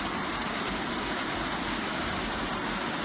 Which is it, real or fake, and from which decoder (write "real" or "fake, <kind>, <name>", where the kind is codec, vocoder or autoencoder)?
real